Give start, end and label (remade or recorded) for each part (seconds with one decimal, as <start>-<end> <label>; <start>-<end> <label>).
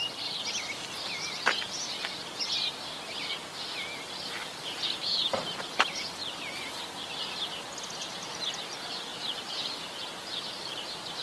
0.0-6.2 recorded; 6.2-6.8 remade; 6.8-9.1 recorded; 9.1-11.2 remade